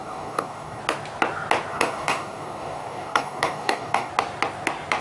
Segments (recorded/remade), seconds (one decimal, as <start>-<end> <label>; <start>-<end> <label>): 0.0-0.8 remade; 0.8-1.7 recorded; 1.7-4.1 remade; 4.1-5.0 recorded